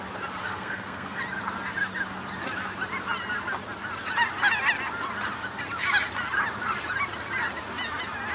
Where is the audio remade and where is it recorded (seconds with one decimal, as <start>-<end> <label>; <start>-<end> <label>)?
0.0-0.4 recorded; 0.4-1.2 remade; 1.2-8.3 recorded